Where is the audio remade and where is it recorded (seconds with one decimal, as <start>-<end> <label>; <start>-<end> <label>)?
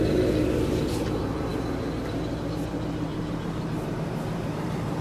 0.0-3.1 recorded; 3.1-5.0 remade